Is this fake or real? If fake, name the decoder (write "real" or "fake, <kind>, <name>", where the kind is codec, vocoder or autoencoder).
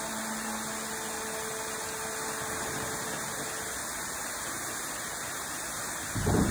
real